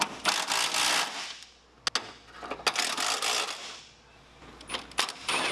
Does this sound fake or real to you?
real